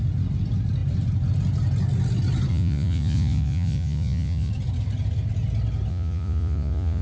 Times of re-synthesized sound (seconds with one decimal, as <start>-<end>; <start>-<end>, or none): 2.5-4.5; 5.9-7.0